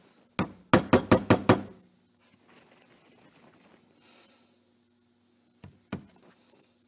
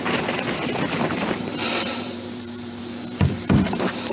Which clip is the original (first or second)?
first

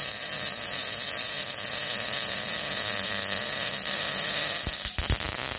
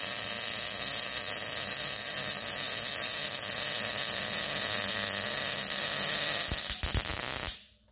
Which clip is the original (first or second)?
second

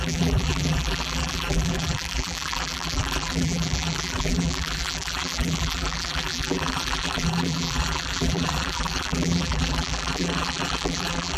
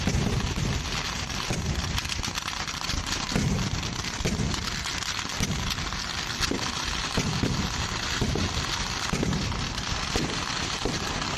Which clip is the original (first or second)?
second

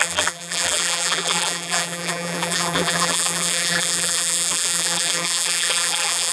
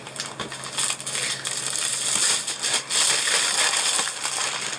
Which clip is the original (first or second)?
second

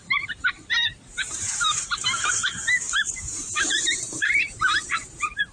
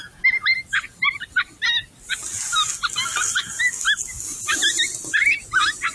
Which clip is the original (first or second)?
second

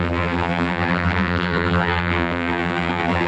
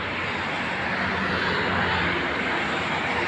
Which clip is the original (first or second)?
second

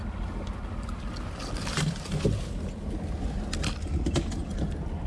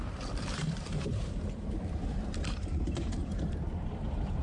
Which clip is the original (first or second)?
first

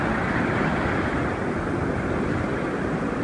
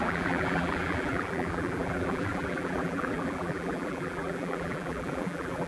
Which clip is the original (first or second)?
first